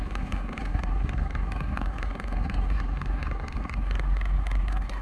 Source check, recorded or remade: remade